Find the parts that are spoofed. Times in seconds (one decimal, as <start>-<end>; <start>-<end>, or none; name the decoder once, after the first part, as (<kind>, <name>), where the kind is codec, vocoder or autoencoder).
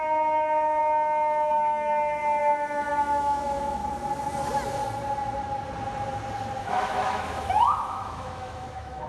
0.0-0.8 (autoencoder, DAC-VAE); 1.5-3.8; 6.6-9.1